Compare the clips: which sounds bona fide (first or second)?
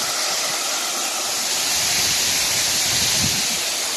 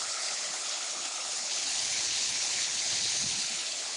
first